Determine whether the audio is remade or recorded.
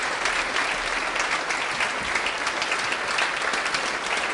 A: recorded